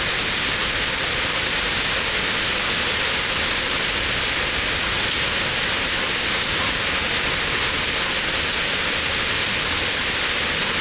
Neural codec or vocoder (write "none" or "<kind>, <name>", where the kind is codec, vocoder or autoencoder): none